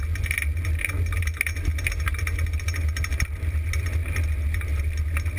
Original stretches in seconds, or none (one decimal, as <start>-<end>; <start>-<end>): 0.0-5.4